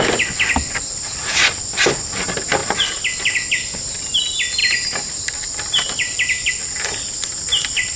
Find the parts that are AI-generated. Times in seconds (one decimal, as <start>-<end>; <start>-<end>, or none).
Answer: 4.6-6.5